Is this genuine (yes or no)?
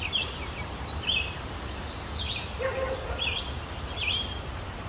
yes